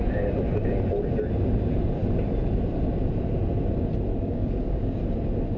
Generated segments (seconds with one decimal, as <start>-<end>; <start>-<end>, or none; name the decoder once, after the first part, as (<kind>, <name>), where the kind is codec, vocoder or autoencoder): 4.1-5.0 (codec, DAC)